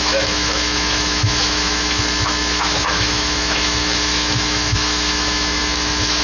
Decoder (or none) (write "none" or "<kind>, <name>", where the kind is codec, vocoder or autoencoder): autoencoder, DAC-VAE